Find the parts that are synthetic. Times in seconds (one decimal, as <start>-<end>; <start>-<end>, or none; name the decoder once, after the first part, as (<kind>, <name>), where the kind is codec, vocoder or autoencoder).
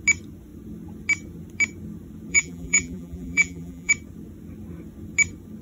2.3-3.9 (vocoder, BigVGAN v2)